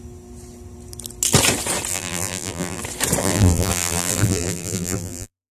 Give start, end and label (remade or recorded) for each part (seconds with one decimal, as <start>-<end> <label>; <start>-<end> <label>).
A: 0.0-1.9 recorded; 1.9-2.8 remade; 2.8-3.2 recorded; 3.2-5.5 remade